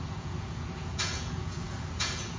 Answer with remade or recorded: remade